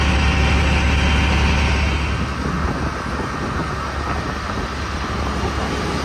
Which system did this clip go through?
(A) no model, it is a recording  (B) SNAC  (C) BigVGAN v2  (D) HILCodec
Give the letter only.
A